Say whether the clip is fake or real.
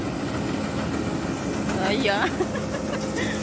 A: real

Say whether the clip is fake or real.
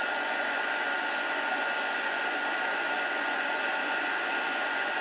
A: fake